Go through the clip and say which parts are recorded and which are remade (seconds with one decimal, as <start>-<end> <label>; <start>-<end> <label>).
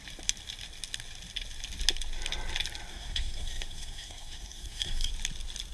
0.0-2.9 recorded; 2.9-5.1 remade; 5.1-5.7 recorded